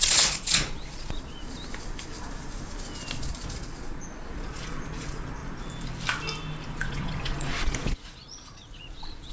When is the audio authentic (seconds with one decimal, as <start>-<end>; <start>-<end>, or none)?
1.4-3.3; 5.4-6.7